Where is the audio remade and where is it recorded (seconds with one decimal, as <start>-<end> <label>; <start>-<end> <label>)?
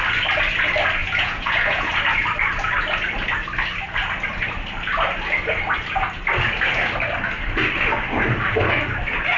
0.0-1.0 recorded; 1.0-1.9 remade; 1.9-9.4 recorded